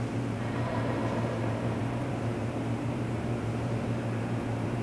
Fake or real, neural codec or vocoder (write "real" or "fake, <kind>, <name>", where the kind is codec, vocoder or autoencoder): fake, vocoder, BigVGAN v2